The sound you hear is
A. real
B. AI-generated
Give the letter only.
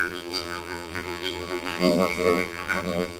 B